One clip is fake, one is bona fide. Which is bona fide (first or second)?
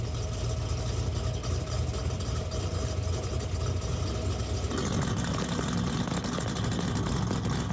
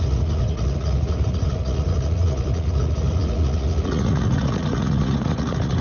first